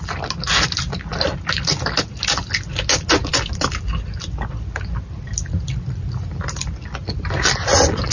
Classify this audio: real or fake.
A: real